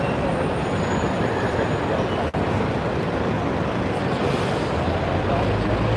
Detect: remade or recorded recorded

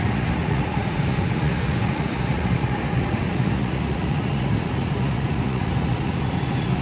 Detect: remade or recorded remade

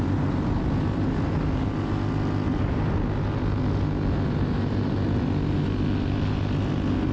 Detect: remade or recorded recorded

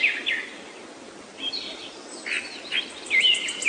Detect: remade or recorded recorded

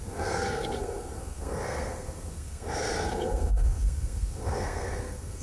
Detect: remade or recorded remade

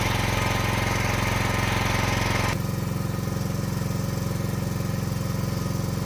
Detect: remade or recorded recorded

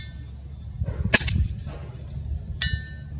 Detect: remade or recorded recorded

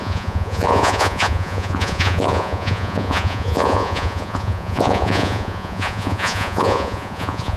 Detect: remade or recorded remade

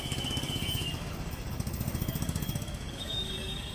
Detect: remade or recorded remade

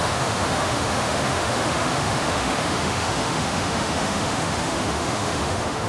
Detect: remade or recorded remade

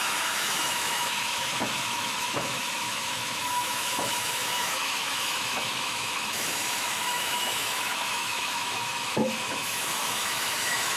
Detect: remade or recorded remade